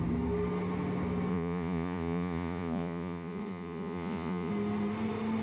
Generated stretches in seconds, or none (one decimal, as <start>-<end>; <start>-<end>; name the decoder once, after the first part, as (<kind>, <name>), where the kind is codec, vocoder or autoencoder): 1.3-4.5 (vocoder, Vocos)